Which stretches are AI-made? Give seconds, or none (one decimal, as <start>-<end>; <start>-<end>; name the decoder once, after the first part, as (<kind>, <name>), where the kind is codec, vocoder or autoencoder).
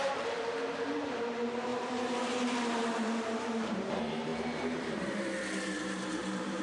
0.0-6.6 (vocoder, BigVGAN v2)